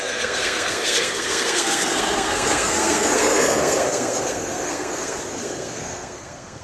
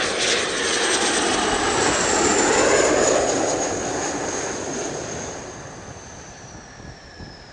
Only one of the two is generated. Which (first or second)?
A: first